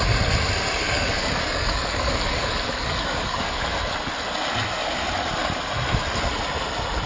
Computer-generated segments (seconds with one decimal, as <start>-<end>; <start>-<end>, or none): 0.8-3.7